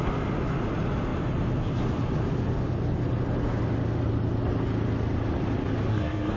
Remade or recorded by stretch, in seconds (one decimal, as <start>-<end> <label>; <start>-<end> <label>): 0.0-5.9 recorded; 5.9-6.4 remade